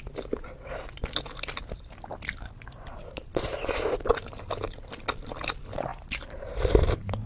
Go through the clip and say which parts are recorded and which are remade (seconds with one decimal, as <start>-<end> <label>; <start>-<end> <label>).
0.0-5.9 recorded; 5.9-7.3 remade

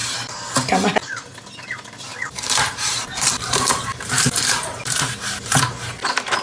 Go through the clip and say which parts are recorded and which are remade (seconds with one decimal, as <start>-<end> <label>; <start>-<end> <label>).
0.0-0.5 remade; 0.5-2.1 recorded; 2.1-5.6 remade; 5.6-6.4 recorded